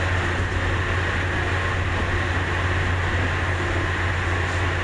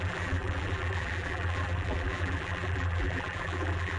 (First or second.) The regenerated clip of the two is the second